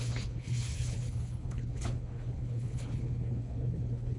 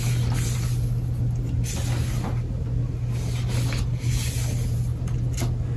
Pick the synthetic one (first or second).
first